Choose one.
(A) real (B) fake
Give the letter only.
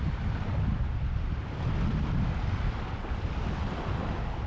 A